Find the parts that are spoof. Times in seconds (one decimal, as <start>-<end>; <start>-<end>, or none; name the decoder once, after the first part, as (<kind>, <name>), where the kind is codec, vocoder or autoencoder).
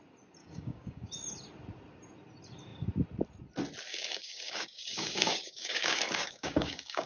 0.4-1.1 (codec, DAC); 3.9-7.1